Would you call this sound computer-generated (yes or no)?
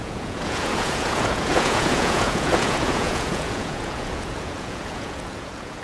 yes